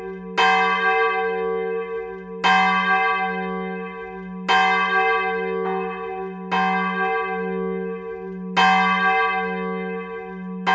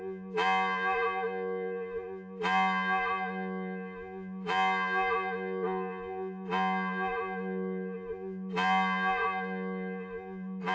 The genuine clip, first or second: first